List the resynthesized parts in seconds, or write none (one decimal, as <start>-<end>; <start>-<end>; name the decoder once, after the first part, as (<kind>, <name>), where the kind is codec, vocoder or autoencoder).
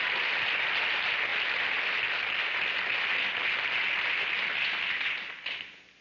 none